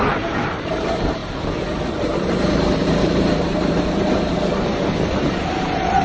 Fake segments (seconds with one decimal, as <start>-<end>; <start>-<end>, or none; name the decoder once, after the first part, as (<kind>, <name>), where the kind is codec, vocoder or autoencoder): 0.0-1.2 (vocoder, BigVGAN v2); 1.9-6.0